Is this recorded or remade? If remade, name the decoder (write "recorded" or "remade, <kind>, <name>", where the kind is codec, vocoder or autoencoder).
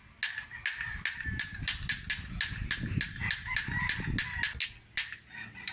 recorded